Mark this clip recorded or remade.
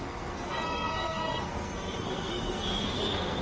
remade